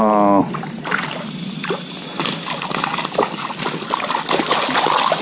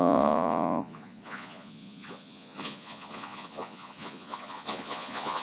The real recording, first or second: first